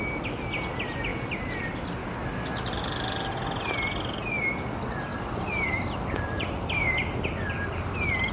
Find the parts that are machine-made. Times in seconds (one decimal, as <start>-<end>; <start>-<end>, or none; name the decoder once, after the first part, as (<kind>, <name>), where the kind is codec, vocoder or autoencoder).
1.1-1.6 (vocoder, BigVGAN v2); 2.0-2.8; 5.1-7.7